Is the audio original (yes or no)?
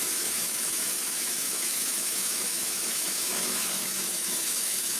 no